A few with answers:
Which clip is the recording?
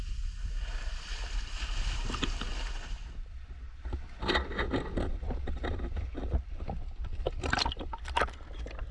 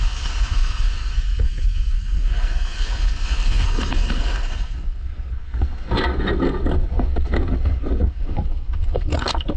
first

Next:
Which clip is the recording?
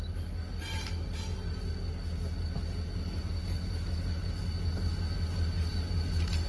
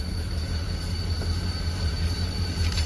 first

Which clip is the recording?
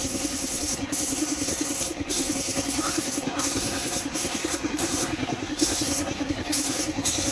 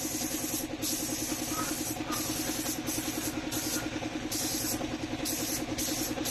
second